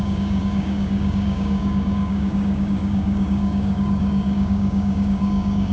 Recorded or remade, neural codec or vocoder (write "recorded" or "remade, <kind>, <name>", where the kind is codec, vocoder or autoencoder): remade, codec, DAC